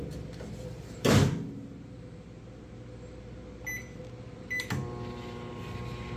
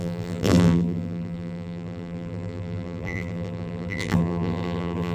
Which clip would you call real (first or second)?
first